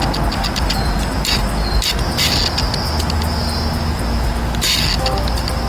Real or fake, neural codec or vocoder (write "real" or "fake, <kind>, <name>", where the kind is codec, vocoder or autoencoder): real